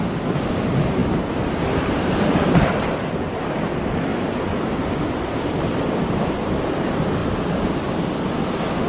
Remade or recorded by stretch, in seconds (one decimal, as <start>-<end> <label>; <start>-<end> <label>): 0.0-1.0 recorded; 1.0-2.7 remade; 2.7-4.1 recorded; 4.1-6.8 remade; 6.8-8.9 recorded